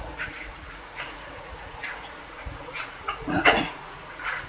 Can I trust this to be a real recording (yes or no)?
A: no